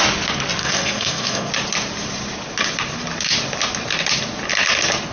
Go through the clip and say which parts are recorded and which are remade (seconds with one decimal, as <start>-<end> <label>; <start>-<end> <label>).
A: 0.0-0.6 recorded; 0.6-1.5 remade; 1.5-5.1 recorded